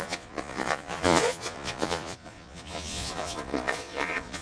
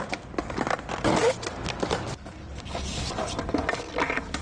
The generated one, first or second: first